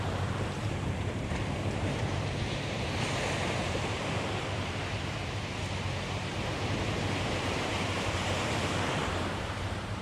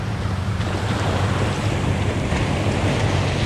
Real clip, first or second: second